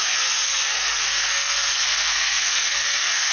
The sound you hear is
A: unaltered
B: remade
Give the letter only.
B